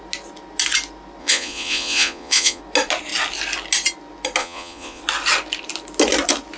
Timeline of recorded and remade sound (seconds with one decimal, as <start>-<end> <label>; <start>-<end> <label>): 0.0-1.2 recorded; 1.2-2.6 remade; 2.6-4.4 recorded; 4.4-5.0 remade; 5.0-6.6 recorded